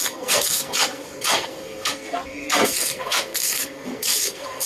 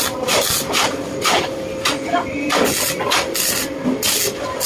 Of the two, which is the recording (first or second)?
second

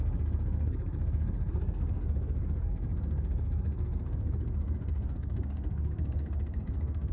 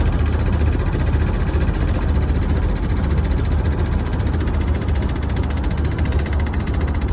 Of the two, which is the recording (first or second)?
second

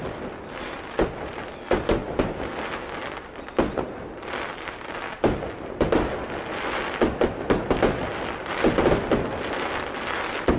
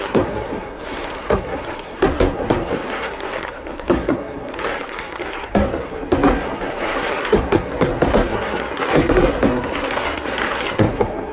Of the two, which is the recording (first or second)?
first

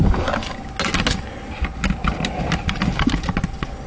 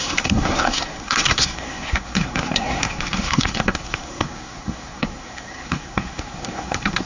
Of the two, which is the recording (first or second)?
first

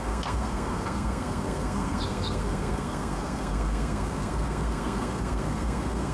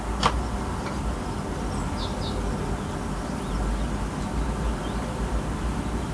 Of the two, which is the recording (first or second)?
second